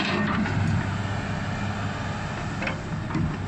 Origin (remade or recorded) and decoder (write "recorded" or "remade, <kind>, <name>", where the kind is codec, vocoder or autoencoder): recorded